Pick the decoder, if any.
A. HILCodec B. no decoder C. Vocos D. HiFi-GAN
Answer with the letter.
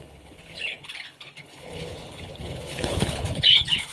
A